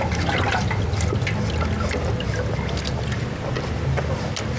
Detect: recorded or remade recorded